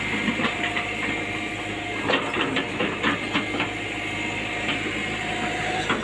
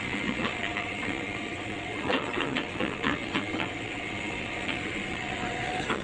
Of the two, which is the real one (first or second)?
first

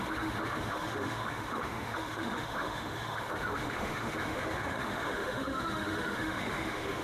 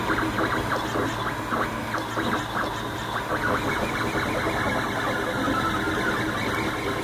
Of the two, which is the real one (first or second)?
second